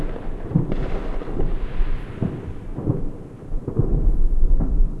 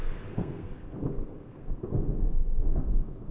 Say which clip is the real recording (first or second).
first